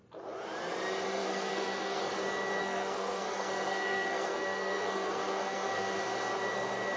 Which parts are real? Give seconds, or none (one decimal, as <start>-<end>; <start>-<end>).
0.0-1.2; 2.0-2.6; 6.0-7.0